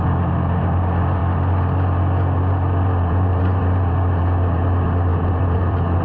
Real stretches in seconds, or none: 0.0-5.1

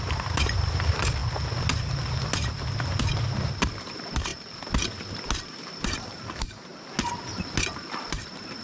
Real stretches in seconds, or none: 1.2-3.8; 4.3-5.4; 6.7-7.9

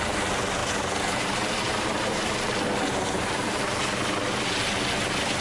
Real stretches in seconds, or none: 0.0-0.6; 3.8-5.4

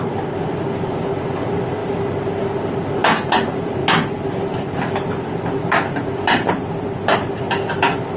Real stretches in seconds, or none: 0.0-8.2

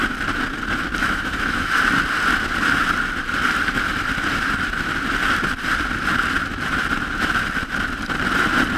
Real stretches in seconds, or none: 0.0-1.0; 1.8-8.8

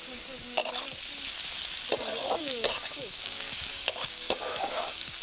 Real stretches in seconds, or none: 0.6-2.4

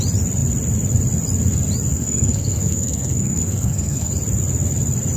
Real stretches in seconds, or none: 0.0-1.9; 4.1-5.2